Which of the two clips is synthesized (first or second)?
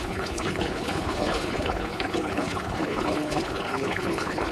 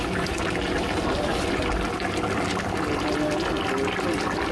first